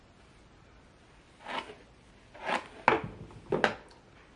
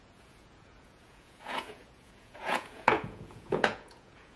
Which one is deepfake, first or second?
second